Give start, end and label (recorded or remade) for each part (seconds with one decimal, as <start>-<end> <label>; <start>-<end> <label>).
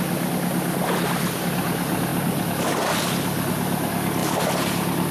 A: 0.0-5.1 recorded